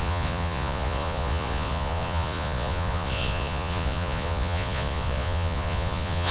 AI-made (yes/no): yes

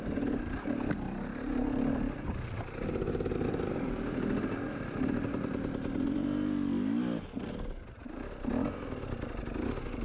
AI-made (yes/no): no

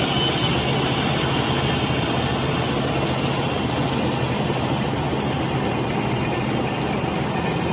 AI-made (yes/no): no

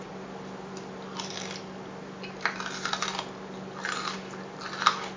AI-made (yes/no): no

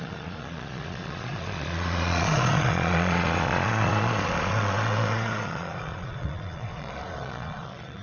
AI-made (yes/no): yes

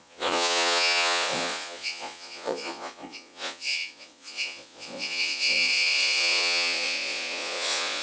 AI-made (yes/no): yes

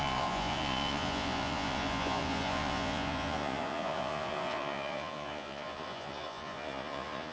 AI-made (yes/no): yes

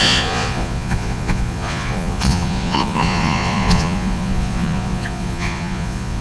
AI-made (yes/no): yes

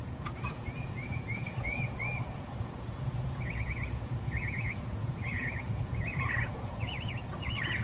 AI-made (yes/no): yes